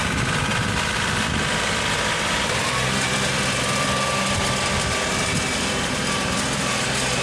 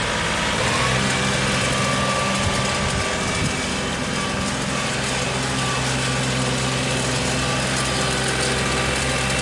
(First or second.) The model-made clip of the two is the first